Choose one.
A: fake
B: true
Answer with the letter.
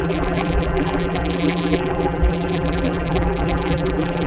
A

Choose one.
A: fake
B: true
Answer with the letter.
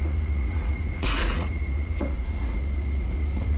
A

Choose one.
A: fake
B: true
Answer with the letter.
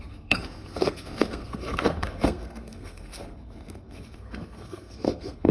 A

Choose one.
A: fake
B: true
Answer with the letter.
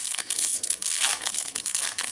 A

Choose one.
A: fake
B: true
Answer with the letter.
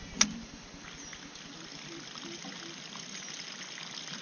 B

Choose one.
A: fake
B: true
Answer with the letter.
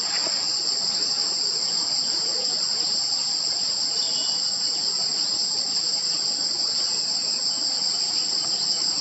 B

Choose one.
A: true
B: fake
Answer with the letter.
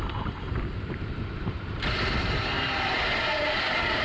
B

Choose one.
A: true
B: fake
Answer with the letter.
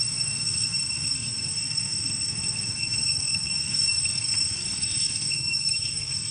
B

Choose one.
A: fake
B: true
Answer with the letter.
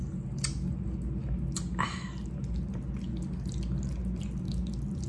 B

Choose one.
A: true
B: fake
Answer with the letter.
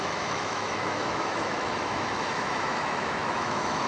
B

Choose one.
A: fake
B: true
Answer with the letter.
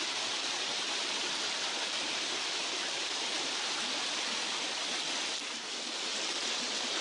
B